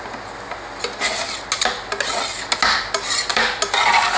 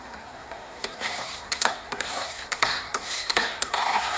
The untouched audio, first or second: first